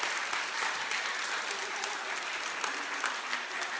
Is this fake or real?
real